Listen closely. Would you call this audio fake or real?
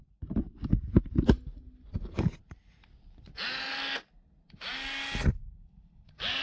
real